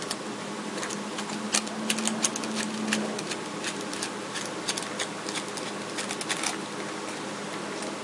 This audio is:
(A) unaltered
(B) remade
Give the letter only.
A